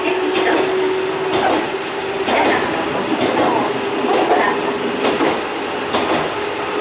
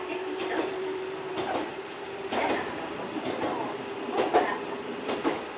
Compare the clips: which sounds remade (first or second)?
second